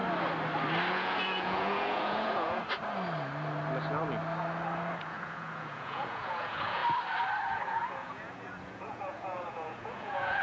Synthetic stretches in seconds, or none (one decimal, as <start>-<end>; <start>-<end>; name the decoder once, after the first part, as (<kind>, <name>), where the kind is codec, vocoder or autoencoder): 0.9-2.6 (vocoder, Vocos); 5.0-6.8; 7.6-10.4

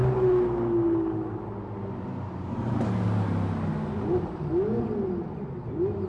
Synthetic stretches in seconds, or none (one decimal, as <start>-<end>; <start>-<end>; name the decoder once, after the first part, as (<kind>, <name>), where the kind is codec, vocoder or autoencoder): none

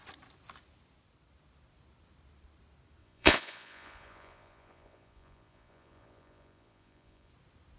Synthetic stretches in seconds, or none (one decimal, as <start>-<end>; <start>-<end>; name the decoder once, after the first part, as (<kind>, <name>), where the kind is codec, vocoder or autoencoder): 3.0-7.3 (vocoder, Vocos)

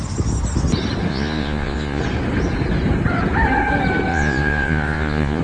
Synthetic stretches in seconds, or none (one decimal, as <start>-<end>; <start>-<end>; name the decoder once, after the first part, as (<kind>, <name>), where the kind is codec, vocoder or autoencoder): 1.1-2.0 (vocoder, Vocos); 4.1-5.4

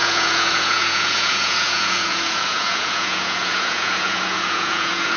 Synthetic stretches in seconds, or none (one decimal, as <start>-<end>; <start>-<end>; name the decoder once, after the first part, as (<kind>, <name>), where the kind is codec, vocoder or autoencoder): 0.0-5.2 (vocoder, Vocos)

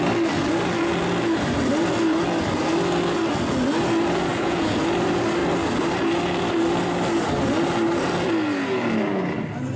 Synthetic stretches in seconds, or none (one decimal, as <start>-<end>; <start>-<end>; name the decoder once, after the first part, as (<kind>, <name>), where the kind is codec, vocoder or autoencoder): 4.3-4.8 (vocoder, Vocos)